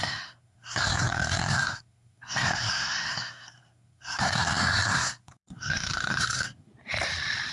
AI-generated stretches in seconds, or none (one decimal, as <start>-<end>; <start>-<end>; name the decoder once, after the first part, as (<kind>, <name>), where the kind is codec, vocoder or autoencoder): 0.0-6.7 (codec, SNAC)